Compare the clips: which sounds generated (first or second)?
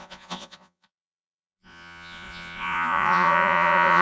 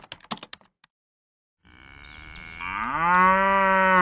first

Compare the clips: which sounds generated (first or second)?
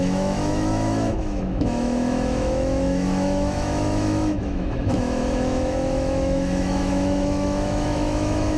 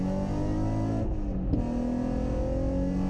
first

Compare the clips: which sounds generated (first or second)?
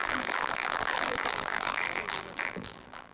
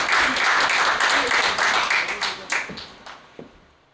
first